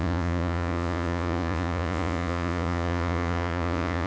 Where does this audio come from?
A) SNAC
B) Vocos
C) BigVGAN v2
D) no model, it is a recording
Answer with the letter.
B